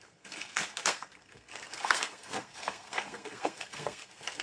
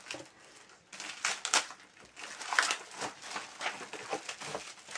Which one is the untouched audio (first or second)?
second